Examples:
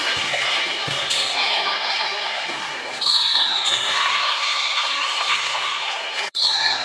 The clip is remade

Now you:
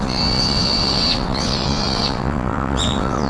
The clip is remade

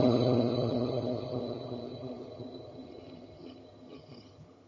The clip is remade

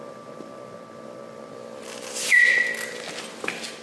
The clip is recorded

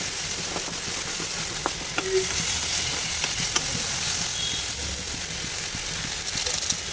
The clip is recorded